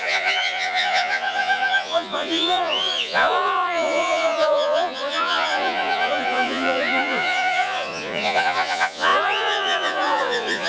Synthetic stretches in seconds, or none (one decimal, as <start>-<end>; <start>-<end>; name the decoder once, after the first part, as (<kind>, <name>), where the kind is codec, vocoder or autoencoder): 0.0-10.7 (vocoder, Vocos)